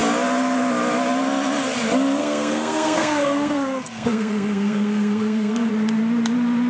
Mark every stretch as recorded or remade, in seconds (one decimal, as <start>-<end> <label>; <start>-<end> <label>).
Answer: 0.0-2.2 recorded; 2.2-5.7 remade; 5.7-6.7 recorded